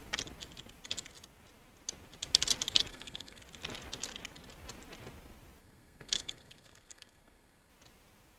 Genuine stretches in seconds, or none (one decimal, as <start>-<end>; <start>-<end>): 0.0-2.9; 3.4-5.6; 7.7-8.4